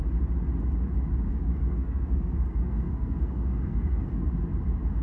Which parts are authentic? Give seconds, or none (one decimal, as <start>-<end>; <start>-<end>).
0.0-1.3; 4.3-5.0